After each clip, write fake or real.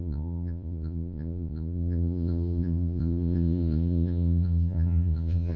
fake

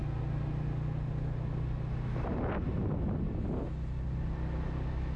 real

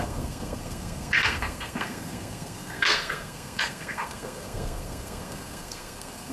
fake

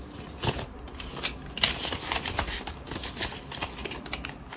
real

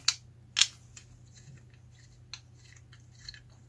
real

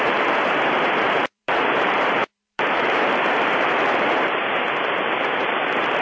fake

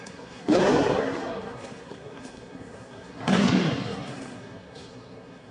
fake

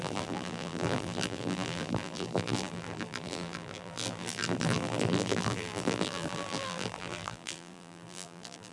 fake